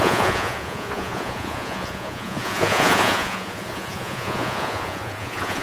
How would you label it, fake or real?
fake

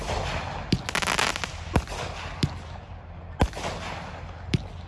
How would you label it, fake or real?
real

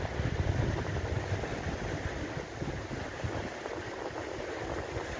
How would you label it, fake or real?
real